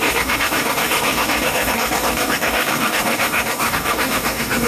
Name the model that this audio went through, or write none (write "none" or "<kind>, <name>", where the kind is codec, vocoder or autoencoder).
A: codec, DAC